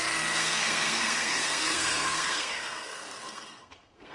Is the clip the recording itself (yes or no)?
no